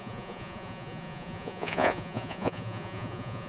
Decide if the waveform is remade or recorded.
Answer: remade